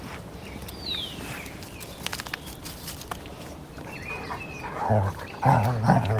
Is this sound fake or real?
real